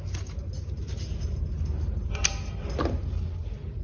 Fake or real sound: real